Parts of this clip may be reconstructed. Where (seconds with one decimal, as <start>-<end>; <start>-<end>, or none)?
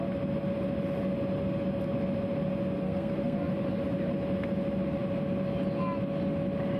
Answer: 2.8-3.5